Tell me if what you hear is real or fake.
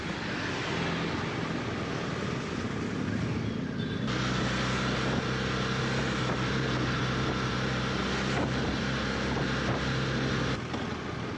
real